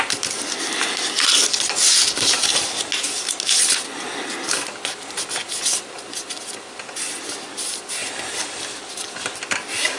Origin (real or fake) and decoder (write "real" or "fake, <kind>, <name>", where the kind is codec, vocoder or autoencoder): real